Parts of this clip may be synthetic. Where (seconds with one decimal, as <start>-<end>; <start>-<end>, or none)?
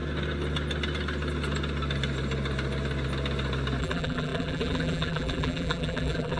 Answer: 3.8-6.4